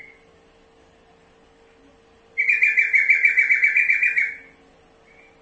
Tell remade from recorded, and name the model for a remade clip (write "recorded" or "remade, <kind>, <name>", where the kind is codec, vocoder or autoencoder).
recorded